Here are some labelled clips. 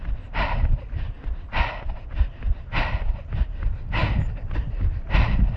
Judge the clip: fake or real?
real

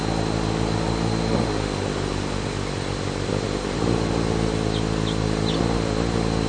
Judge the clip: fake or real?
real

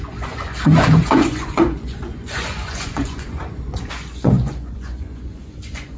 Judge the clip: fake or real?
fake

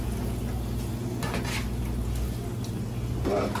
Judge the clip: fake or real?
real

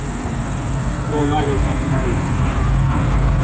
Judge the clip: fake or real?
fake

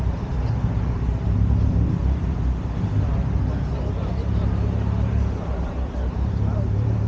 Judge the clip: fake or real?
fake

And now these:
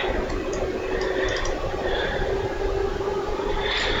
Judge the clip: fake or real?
real